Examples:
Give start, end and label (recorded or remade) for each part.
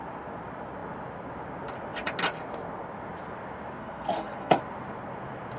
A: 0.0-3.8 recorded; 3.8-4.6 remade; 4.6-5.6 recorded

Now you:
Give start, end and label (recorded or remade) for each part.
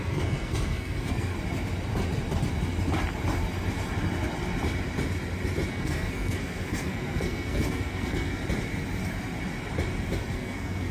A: 0.0-1.3 remade; 1.3-5.7 recorded; 5.7-8.4 remade; 8.4-10.2 recorded; 10.2-10.9 remade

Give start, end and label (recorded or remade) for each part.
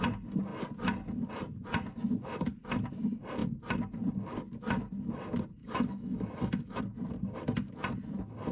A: 0.0-5.6 recorded; 5.6-6.8 remade; 6.8-8.5 recorded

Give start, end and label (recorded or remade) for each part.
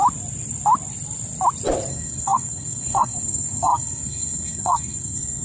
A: 0.0-1.9 recorded; 1.9-5.4 remade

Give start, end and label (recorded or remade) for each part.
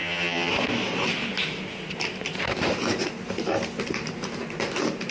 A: 0.0-0.5 remade; 0.5-5.1 recorded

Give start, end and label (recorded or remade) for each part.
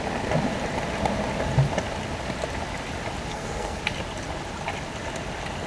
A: 0.0-3.3 recorded; 3.3-3.8 remade; 3.8-5.7 recorded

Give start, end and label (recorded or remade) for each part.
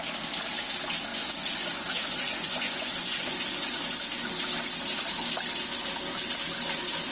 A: 0.0-1.1 recorded; 1.1-3.8 remade; 3.8-7.1 recorded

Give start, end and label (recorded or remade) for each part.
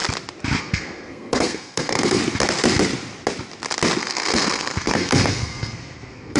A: 0.0-0.6 recorded; 0.6-2.2 remade; 2.2-4.0 recorded; 4.0-6.4 remade